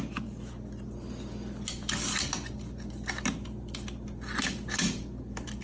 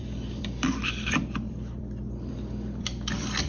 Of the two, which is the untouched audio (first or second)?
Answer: first